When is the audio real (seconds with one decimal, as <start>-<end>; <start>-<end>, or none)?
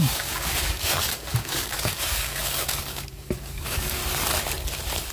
4.0-5.1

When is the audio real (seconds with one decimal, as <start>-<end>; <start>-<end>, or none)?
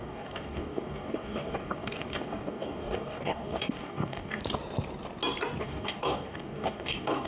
4.4-5.6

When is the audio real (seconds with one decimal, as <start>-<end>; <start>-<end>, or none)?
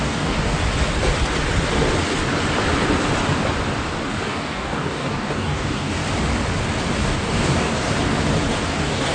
0.6-4.1; 6.0-7.0; 7.7-8.7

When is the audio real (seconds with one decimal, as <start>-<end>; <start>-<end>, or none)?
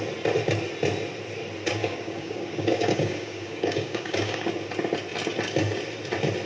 0.0-1.8; 4.5-6.5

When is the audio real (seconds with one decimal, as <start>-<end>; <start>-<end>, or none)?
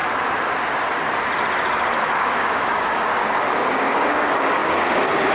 0.0-2.1; 3.1-3.7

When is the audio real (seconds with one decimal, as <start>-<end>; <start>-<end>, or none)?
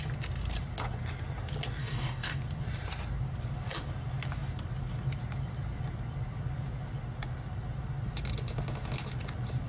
0.0-1.8; 2.4-9.7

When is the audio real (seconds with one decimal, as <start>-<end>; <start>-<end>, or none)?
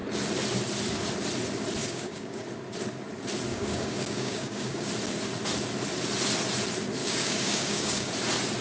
0.0-1.8; 2.4-3.5; 4.9-7.0; 8.1-8.6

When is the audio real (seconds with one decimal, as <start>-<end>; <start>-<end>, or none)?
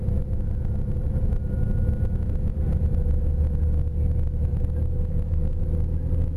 0.0-4.5; 5.6-6.4